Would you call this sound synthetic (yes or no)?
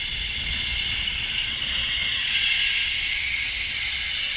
yes